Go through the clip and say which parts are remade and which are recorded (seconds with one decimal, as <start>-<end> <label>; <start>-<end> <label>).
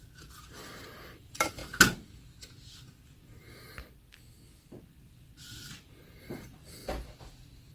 0.0-1.6 remade; 1.6-6.2 recorded; 6.2-6.8 remade; 6.8-7.7 recorded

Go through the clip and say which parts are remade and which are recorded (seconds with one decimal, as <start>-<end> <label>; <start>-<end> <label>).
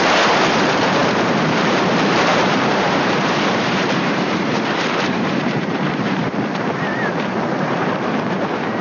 0.0-8.8 remade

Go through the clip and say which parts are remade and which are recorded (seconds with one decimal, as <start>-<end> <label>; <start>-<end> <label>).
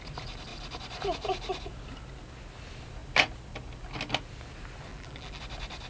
0.0-4.9 recorded; 4.9-5.4 remade; 5.4-5.9 recorded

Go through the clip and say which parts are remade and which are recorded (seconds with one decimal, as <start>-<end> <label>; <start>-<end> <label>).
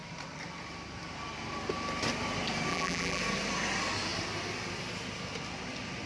0.0-2.7 recorded; 2.7-3.2 remade; 3.2-6.1 recorded